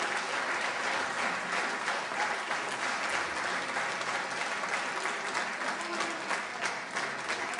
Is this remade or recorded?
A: recorded